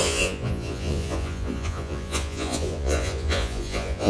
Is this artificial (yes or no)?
yes